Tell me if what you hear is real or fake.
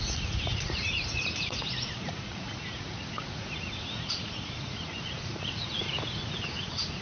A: fake